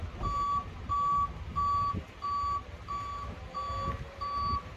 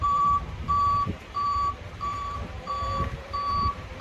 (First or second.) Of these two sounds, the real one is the first